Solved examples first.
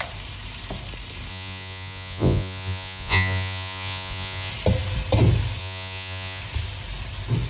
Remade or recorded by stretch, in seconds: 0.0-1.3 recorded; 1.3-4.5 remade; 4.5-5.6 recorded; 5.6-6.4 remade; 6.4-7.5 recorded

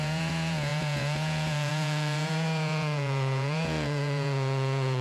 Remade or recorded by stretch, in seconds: 0.0-5.0 remade

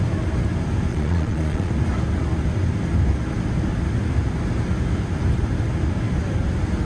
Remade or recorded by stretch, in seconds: 0.0-0.9 recorded; 0.9-1.7 remade; 1.7-6.9 recorded

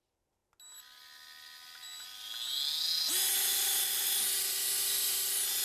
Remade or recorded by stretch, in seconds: 0.0-5.6 recorded

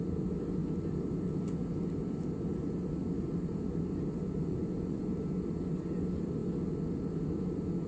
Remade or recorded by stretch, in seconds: 0.0-4.4 recorded; 4.4-5.0 remade; 5.0-7.9 recorded

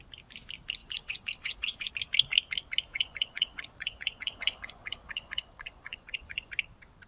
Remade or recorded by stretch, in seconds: 0.0-0.8 recorded; 0.8-1.9 remade; 1.9-2.9 recorded; 2.9-6.5 remade; 6.5-7.1 recorded